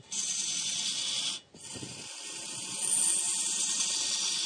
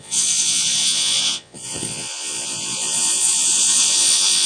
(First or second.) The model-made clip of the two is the second